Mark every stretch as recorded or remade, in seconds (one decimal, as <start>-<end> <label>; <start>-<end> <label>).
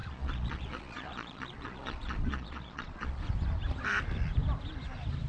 0.0-3.2 remade; 3.2-5.3 recorded